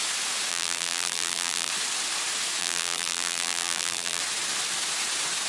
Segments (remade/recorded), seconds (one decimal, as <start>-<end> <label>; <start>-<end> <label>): 0.0-0.5 recorded; 0.5-1.7 remade; 1.7-2.6 recorded; 2.6-4.2 remade; 4.2-5.5 recorded